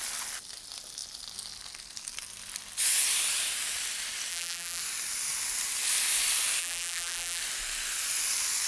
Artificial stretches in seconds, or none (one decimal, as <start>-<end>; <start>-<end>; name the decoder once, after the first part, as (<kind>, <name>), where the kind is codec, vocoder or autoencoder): 4.3-4.8 (vocoder, BigVGAN v2); 6.6-7.4